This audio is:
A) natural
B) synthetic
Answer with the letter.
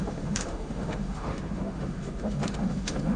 B